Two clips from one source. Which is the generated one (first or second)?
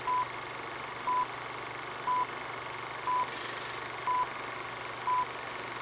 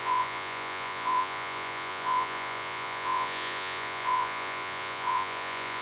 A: second